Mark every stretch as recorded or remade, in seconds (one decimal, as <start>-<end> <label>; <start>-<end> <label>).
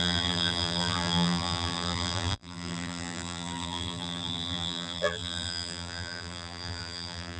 0.0-7.4 remade